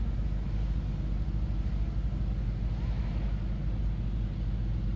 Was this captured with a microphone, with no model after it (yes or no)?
yes